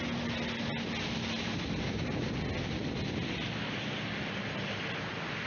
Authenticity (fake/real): real